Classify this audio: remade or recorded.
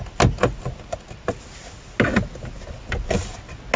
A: recorded